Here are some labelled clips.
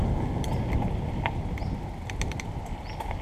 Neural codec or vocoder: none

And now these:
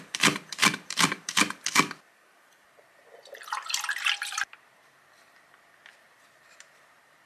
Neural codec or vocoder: vocoder, BigVGAN v2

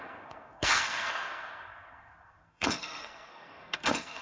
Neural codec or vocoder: codec, SNAC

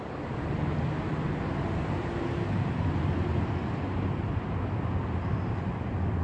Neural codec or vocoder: none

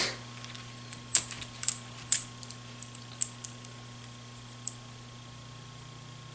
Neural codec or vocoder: none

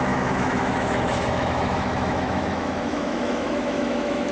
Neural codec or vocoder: autoencoder, DAC-VAE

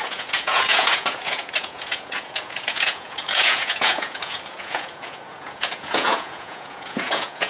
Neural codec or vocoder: vocoder, Vocos